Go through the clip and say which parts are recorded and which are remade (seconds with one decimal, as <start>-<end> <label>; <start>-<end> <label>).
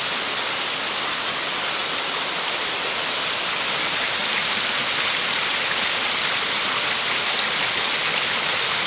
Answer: 0.0-1.8 recorded; 1.8-4.2 remade; 4.2-8.0 recorded; 8.0-8.5 remade; 8.5-8.9 recorded